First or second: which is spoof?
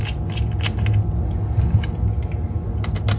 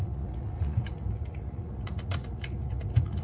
second